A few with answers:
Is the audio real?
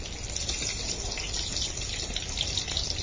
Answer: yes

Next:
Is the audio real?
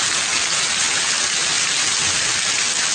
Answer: yes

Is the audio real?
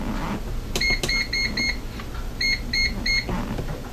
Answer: yes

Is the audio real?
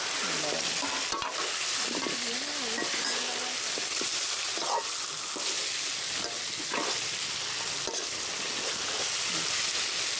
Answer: yes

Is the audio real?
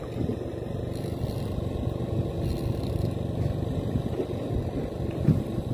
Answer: yes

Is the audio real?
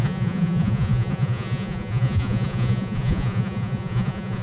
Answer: no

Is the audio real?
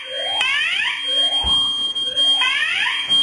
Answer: yes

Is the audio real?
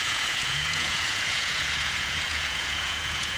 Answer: no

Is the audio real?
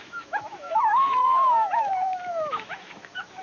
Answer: no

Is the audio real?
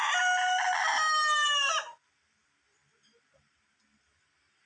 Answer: yes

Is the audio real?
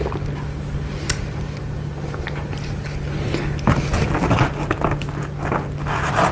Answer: yes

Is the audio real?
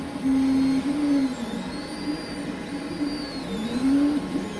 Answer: yes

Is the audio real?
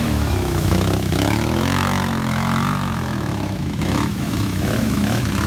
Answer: no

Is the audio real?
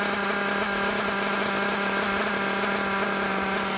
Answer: yes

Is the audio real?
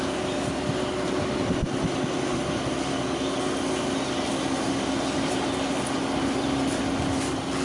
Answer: yes